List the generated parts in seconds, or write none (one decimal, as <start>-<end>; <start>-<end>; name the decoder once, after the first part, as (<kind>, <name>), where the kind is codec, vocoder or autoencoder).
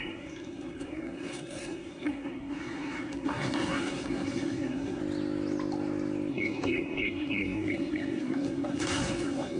0.0-5.0 (codec, SNAC); 6.3-9.6